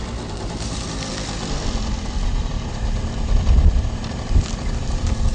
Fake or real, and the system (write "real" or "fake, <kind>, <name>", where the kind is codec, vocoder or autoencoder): fake, vocoder, BigVGAN v2